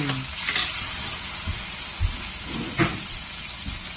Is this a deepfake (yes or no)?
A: no